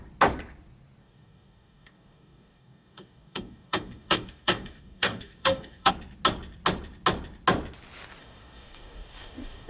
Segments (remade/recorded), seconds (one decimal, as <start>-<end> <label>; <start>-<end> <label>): 0.0-1.0 recorded; 1.0-5.9 remade; 5.9-8.2 recorded; 8.2-9.7 remade